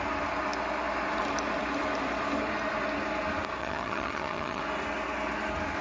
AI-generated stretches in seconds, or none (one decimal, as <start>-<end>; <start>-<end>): 3.6-4.6

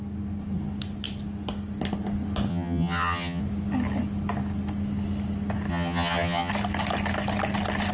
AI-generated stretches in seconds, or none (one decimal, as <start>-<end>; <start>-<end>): 2.5-3.4; 5.7-6.5

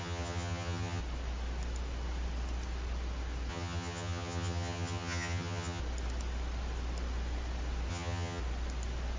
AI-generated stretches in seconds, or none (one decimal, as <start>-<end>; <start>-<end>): 0.0-1.0; 3.5-5.8; 7.9-8.4

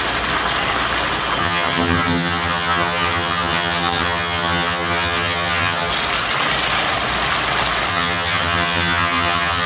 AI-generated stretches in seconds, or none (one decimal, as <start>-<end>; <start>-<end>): 1.4-5.9; 7.9-9.7

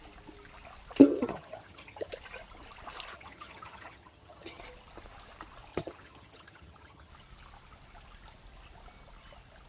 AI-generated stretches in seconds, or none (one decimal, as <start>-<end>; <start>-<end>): 1.0-2.1; 3.1-4.6; 5.7-7.1

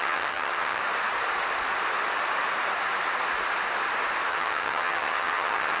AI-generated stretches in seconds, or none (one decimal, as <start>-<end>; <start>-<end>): 0.0-0.8; 4.3-5.8